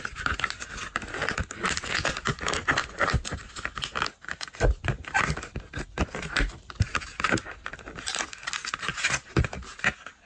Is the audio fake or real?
real